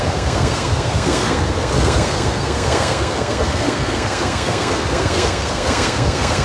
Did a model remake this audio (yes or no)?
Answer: yes